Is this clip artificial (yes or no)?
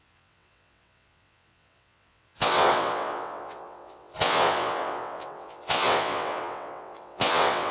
yes